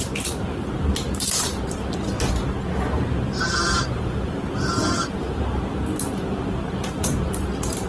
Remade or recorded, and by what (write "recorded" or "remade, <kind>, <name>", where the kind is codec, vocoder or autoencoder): recorded